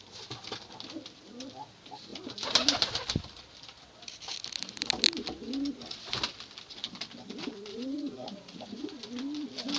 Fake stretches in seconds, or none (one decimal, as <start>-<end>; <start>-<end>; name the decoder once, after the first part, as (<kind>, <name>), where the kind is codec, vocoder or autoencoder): 7.7-9.0 (vocoder, Vocos)